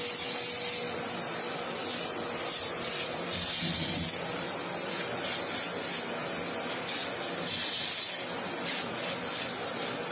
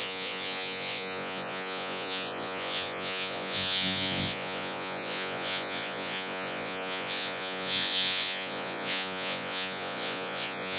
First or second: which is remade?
second